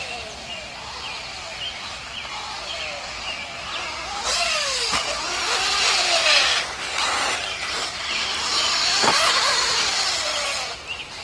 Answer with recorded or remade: recorded